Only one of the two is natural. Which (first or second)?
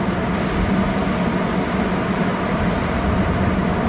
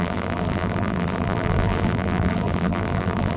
first